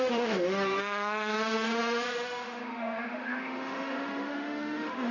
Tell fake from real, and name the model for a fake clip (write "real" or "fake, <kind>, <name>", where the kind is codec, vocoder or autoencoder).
fake, autoencoder, DAC-VAE